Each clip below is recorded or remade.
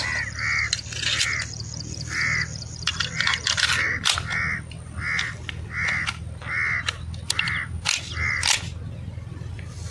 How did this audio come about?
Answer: recorded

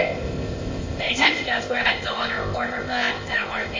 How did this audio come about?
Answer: remade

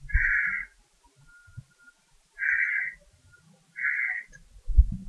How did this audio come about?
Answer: recorded